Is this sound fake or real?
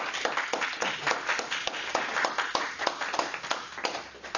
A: real